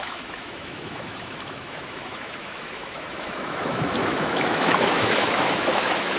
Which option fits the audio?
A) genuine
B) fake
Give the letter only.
B